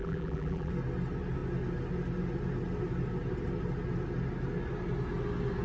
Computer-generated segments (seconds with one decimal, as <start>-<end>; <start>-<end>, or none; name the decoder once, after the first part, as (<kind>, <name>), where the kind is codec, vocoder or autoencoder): 0.0-0.7 (vocoder, BigVGAN v2)